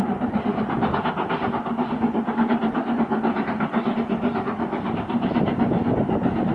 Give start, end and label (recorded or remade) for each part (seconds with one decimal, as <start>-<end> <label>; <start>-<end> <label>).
0.0-6.5 recorded